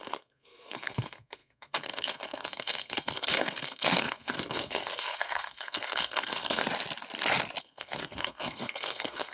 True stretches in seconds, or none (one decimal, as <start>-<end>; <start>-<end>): 6.6-7.6